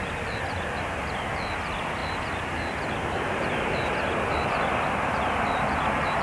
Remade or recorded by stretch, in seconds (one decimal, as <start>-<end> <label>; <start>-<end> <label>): 0.0-6.2 recorded

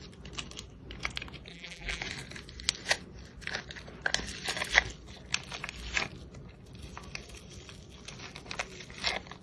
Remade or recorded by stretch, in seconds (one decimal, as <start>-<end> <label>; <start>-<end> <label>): 0.0-1.5 recorded; 1.5-2.0 remade; 2.0-9.4 recorded

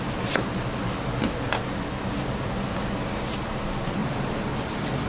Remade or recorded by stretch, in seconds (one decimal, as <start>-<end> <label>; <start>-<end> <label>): 0.0-4.0 recorded; 4.0-5.1 remade

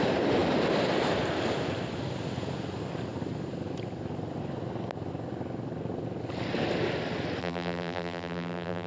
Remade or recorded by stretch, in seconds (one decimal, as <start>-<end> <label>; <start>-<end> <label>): 0.0-7.4 recorded; 7.4-8.9 remade

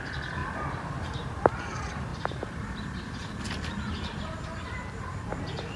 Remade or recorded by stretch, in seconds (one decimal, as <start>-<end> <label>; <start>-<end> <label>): 0.0-0.4 recorded; 0.4-1.6 remade; 1.6-2.1 recorded; 2.1-5.8 remade

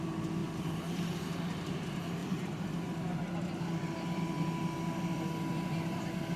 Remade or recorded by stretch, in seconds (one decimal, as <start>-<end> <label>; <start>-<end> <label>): 0.0-0.4 recorded; 0.4-1.5 remade; 1.5-2.2 recorded; 2.2-3.4 remade; 3.4-6.4 recorded

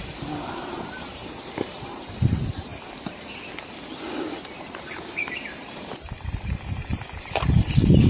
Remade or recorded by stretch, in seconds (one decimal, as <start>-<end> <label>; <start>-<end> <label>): 0.0-1.2 remade; 1.2-1.8 recorded; 1.8-2.7 remade; 2.7-4.8 recorded; 4.8-6.9 remade; 6.9-8.1 recorded

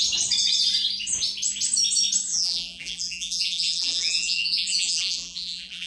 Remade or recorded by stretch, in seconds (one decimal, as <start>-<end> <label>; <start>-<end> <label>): 0.0-2.3 recorded; 2.3-5.9 remade